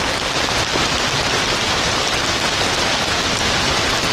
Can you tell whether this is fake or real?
real